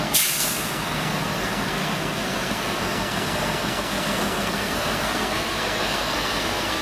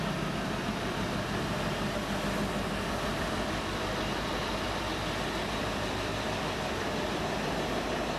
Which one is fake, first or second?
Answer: first